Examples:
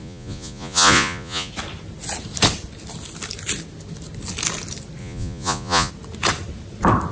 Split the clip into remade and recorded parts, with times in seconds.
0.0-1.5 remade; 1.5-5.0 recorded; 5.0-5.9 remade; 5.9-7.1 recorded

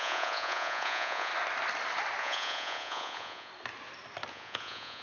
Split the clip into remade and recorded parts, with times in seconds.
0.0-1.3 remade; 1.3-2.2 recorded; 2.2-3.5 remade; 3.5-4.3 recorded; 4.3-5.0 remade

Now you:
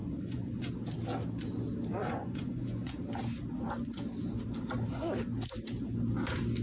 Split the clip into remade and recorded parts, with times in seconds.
0.0-0.7 remade; 0.7-1.9 recorded; 1.9-3.0 remade; 3.0-6.6 recorded

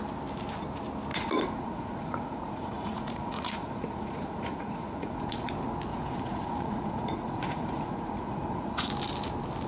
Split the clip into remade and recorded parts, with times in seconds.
0.0-1.1 recorded; 1.1-5.5 remade; 5.5-5.9 recorded; 5.9-8.9 remade; 8.9-9.7 recorded

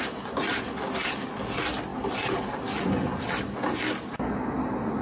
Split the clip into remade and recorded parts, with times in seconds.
0.0-5.0 recorded

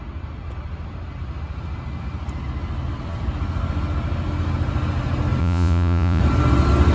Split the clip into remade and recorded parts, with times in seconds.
0.0-5.4 recorded; 5.4-6.2 remade; 6.2-6.9 recorded

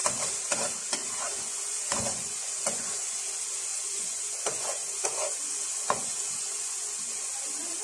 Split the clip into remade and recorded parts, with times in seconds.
0.0-1.0 recorded; 1.0-3.2 remade; 3.2-3.7 recorded; 3.7-6.9 remade; 6.9-7.8 recorded